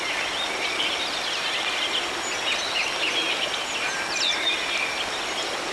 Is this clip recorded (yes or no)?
yes